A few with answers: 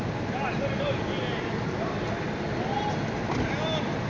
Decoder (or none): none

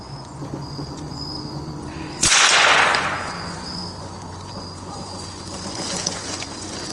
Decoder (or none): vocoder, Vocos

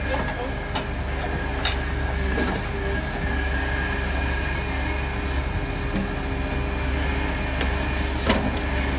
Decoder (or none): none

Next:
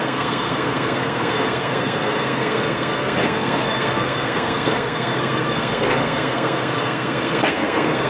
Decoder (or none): codec, SNAC